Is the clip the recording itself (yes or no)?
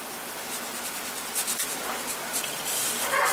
yes